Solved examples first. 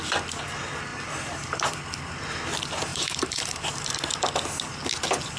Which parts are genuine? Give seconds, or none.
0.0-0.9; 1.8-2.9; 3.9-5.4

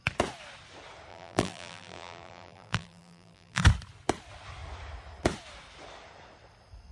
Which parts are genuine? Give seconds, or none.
0.0-1.1; 3.6-6.9

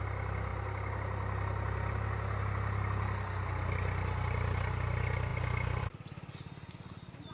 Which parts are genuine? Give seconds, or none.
0.0-7.3

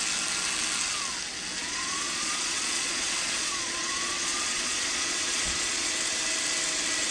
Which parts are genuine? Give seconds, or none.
0.0-1.6; 5.9-7.1